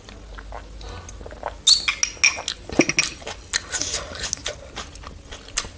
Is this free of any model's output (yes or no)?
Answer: yes